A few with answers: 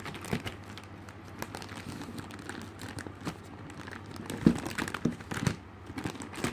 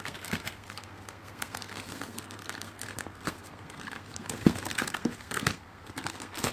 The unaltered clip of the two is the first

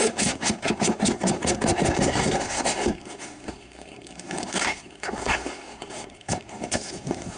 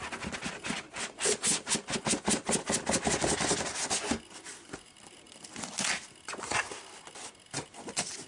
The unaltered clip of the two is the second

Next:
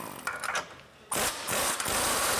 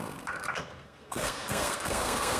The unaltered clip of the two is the first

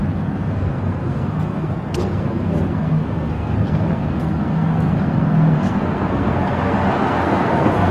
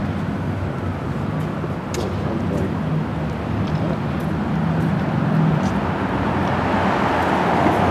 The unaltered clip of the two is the second